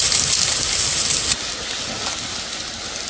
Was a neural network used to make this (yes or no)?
no